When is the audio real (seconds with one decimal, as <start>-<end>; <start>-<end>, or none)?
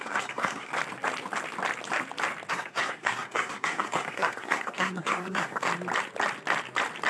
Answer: 0.7-2.5; 5.7-7.1